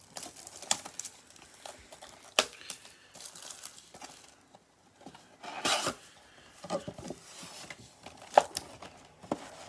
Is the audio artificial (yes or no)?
no